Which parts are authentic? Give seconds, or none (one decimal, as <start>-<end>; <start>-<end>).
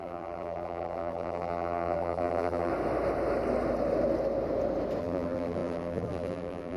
2.7-5.0